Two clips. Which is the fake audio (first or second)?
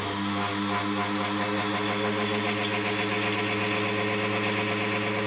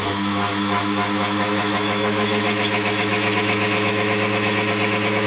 second